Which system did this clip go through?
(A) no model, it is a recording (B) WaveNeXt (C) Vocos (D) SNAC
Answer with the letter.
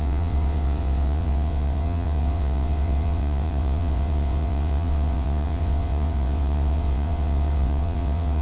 B